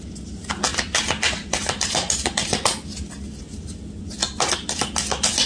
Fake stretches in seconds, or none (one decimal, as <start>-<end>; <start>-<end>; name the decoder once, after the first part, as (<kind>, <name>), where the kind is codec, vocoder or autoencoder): none